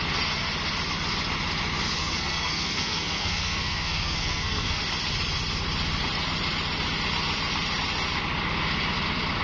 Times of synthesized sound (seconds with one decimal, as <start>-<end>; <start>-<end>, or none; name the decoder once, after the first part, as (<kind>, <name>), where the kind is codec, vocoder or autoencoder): 2.0-4.8 (codec, SNAC)